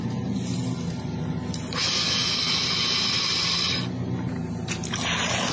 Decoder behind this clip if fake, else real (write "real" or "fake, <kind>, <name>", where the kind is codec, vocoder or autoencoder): real